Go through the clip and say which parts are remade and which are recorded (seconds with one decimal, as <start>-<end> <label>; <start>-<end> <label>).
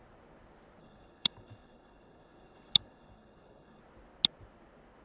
0.0-0.8 recorded; 0.8-3.8 remade; 3.8-5.0 recorded